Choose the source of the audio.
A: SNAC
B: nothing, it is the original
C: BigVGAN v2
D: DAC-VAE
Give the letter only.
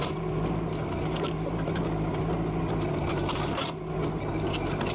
B